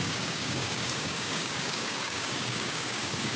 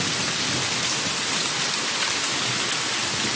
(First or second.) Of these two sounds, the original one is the second